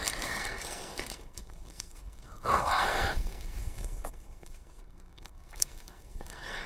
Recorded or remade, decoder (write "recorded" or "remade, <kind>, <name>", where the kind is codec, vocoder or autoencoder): remade, codec, SNAC